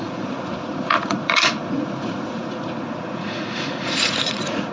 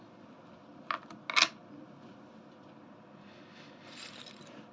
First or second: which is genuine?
second